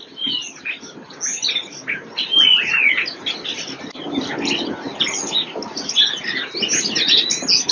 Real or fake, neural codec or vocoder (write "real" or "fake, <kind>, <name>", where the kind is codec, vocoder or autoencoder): real